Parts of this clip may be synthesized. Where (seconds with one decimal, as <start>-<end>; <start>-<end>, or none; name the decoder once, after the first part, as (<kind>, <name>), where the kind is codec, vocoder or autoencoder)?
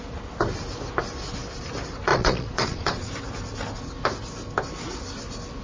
2.1-3.1 (vocoder, Vocos)